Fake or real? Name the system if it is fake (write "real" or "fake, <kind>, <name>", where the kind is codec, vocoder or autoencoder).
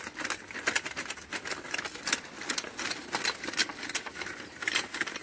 real